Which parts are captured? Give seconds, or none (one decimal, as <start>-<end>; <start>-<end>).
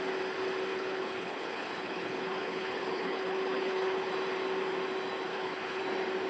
0.0-0.7; 4.1-5.3; 5.8-6.3